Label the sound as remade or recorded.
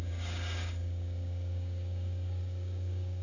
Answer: remade